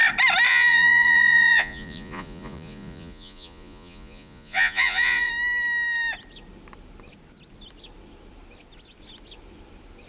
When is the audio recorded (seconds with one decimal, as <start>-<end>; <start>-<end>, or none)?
0.0-0.5; 5.3-10.1